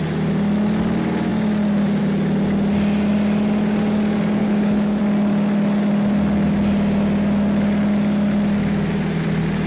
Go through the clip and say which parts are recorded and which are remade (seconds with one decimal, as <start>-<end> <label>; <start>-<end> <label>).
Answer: 0.0-4.4 recorded; 4.4-5.0 remade; 5.0-9.7 recorded